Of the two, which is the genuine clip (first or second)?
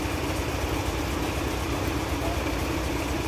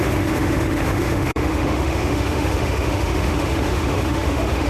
first